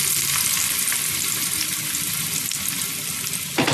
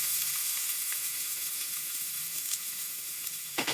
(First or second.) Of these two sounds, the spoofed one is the second